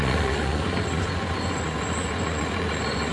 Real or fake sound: fake